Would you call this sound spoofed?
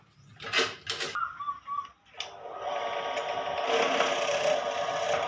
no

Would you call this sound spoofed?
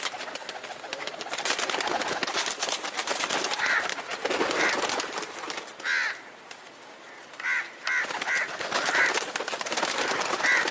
no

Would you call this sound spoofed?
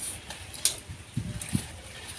no